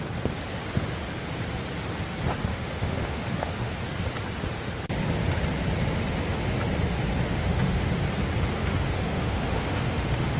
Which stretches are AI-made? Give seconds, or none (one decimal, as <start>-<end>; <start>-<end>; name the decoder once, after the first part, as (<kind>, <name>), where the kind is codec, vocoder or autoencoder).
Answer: 2.5-3.8 (autoencoder, DAC-VAE); 7.4-7.9; 8.6-10.4